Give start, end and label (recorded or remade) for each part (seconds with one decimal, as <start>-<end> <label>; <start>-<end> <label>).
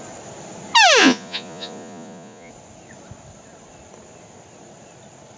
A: 0.0-1.0 recorded; 1.0-2.5 remade; 2.5-5.4 recorded